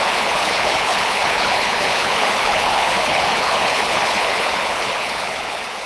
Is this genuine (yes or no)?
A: no